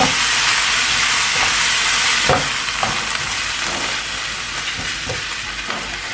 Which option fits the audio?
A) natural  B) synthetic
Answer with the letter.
A